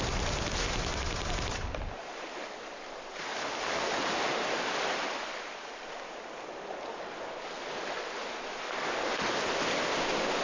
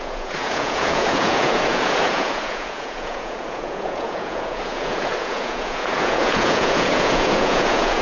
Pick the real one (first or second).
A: first